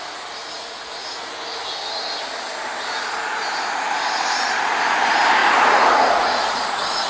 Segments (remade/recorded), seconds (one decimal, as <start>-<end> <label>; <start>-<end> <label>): 0.0-0.4 recorded; 0.4-1.3 remade; 1.3-5.4 recorded; 5.4-7.1 remade